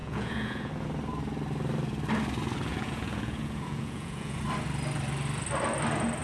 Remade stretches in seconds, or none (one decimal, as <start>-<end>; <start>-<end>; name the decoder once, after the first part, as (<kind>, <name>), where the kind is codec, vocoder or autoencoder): 0.0-0.7 (vocoder, Vocos); 2.7-4.4